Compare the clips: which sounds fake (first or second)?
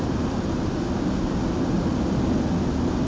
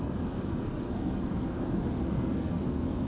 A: second